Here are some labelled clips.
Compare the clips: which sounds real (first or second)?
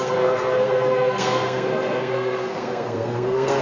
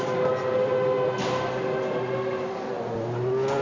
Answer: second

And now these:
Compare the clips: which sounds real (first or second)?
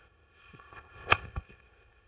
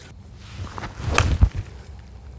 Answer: second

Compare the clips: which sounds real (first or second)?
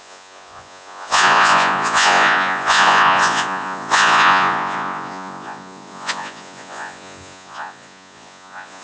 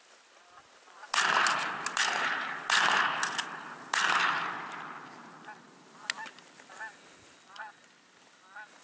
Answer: second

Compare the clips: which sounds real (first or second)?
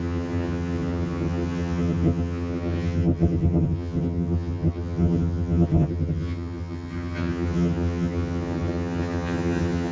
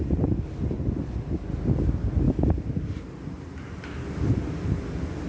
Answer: second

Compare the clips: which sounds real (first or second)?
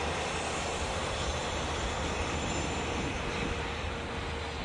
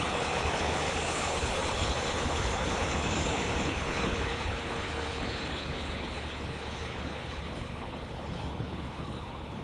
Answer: first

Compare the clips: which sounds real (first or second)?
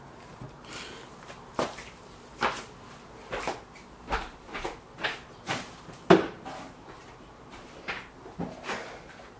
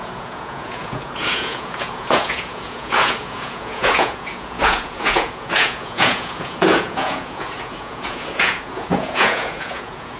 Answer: first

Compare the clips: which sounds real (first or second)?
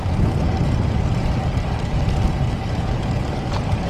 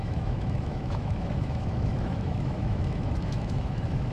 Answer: first